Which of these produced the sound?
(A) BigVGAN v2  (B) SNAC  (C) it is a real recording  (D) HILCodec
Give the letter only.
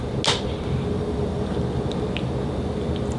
C